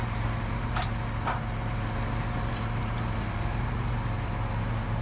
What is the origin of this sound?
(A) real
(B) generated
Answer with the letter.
B